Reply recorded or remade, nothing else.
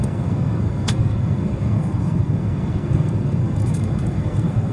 remade